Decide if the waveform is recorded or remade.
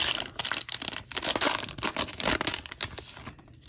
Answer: recorded